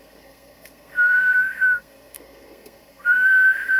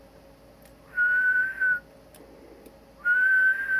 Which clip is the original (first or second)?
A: second